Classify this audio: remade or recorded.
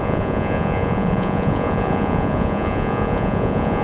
remade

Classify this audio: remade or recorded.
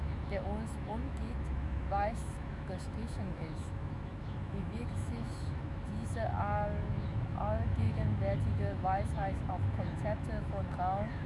remade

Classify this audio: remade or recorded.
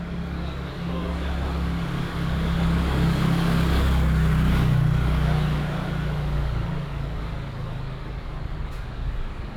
remade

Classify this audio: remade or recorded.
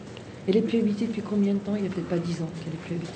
recorded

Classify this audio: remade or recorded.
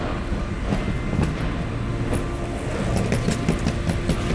recorded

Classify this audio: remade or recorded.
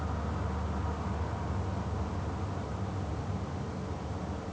recorded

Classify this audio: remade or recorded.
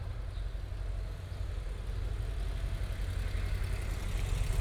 recorded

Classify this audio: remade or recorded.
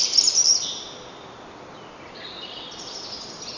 recorded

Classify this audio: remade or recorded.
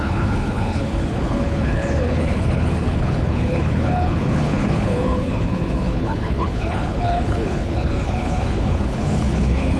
remade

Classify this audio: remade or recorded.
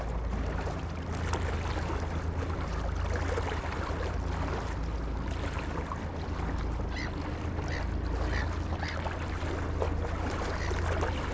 recorded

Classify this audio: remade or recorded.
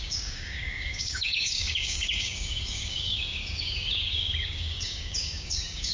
remade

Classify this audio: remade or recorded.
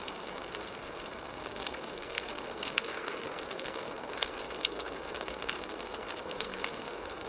remade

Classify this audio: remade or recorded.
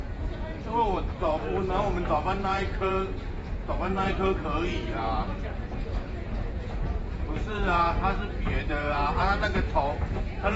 remade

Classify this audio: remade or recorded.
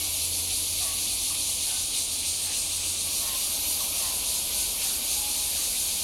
recorded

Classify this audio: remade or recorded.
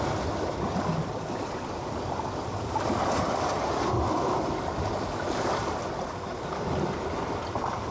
recorded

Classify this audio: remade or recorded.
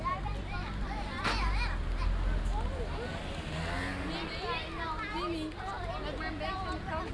recorded